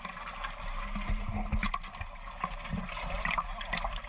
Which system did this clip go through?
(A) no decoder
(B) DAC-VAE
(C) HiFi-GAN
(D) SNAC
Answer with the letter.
A